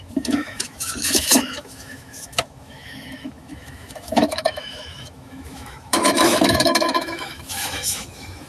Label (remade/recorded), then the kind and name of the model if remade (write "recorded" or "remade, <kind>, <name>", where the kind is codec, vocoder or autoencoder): remade, autoencoder, DAC-VAE